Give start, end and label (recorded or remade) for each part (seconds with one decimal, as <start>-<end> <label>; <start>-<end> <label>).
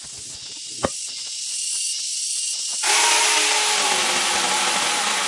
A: 0.0-5.3 recorded